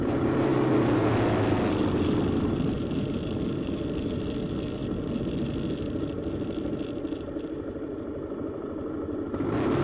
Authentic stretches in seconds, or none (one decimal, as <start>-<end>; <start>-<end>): 0.0-9.8